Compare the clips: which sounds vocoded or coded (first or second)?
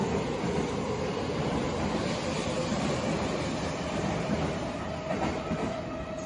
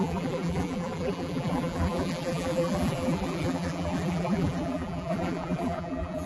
second